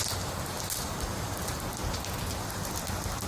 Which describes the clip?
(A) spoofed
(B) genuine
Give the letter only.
B